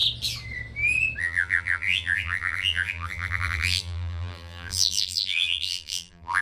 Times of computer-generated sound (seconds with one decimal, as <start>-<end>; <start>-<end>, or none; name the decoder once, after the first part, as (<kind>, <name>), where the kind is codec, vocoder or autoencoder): 1.2-6.4 (vocoder, BigVGAN v2)